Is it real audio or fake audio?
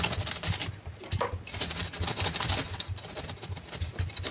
real